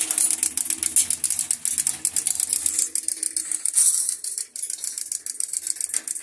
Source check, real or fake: real